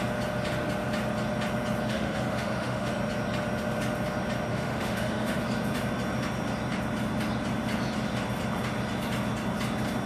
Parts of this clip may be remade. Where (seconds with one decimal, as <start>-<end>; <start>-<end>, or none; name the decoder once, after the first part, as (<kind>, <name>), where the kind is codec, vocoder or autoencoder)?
1.9-2.9 (autoencoder, DAC-VAE); 4.5-5.4